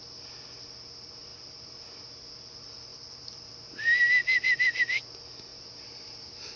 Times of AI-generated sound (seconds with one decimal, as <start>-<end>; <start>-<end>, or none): 1.3-2.0; 2.9-3.5; 4.2-4.8; 5.5-6.6